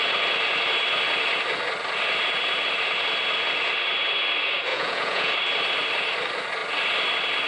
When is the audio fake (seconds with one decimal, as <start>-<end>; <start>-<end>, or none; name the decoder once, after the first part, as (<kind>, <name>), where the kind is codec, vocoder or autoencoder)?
4.7-5.3 (vocoder, Vocos)